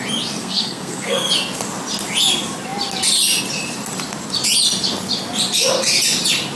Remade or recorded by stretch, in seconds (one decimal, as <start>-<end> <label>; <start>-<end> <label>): 0.0-0.4 recorded; 0.4-1.3 remade; 1.3-6.6 recorded